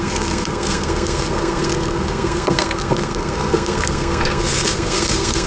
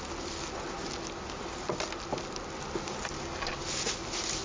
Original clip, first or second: second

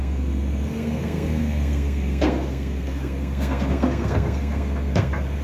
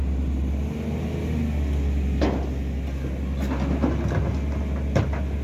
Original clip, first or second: second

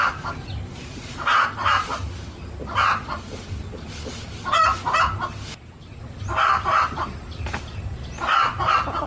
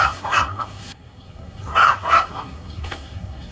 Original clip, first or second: first